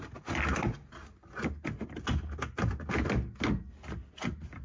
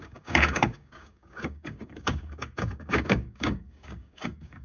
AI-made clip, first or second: second